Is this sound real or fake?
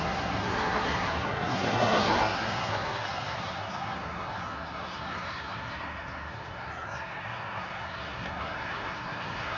fake